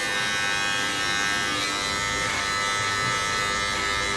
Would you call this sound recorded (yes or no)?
yes